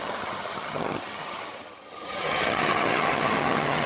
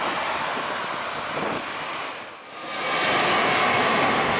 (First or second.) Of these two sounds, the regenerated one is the first